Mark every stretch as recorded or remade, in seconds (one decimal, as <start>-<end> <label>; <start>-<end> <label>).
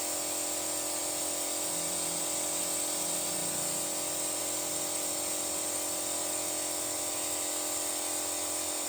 0.0-3.4 remade; 3.4-4.4 recorded; 4.4-8.9 remade